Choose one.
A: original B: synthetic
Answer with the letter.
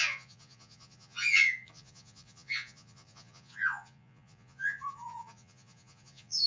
B